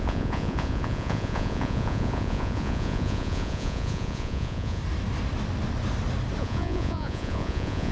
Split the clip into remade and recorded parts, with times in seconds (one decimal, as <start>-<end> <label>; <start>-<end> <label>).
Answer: 0.0-4.8 remade; 4.8-6.4 recorded; 6.4-7.9 remade